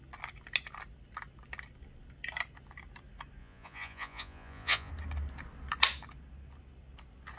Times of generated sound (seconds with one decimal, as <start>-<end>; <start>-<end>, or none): 3.4-4.9

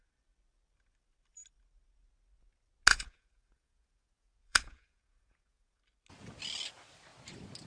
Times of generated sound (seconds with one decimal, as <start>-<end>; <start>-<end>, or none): 2.9-5.8